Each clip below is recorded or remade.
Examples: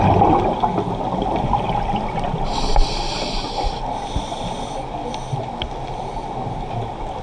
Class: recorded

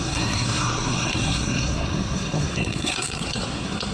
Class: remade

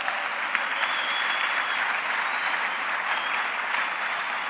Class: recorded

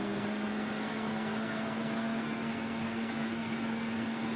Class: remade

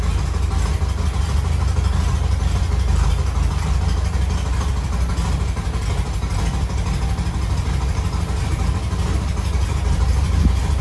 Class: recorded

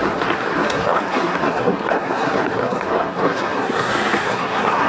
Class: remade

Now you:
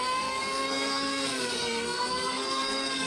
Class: remade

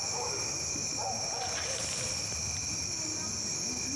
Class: recorded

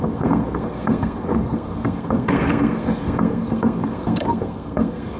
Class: remade